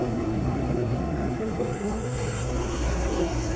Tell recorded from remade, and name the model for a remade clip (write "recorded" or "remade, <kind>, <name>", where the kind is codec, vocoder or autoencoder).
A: remade, codec, SNAC